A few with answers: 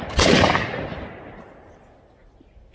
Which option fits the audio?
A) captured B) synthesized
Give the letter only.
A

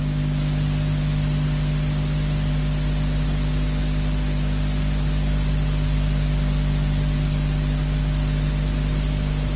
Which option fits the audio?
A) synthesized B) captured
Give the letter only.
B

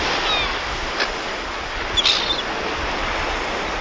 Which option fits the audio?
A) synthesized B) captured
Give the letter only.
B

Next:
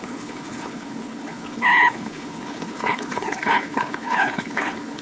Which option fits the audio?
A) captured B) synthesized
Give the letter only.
B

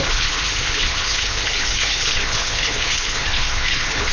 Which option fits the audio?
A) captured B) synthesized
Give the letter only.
B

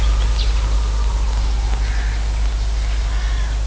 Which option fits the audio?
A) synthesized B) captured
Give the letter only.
B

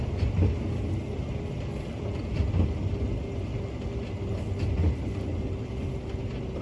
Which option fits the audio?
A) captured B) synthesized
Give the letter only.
A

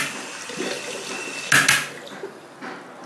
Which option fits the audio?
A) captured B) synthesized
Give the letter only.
A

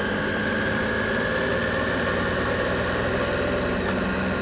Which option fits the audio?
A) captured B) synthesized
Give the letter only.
A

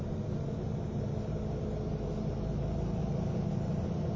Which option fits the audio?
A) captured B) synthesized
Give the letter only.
A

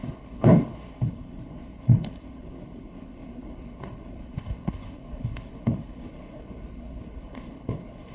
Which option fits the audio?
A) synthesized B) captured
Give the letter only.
A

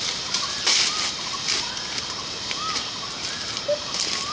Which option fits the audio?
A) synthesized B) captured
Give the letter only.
B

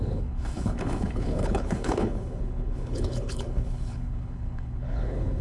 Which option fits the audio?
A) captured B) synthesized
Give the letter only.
B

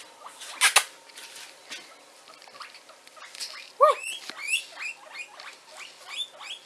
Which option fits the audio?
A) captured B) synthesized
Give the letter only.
A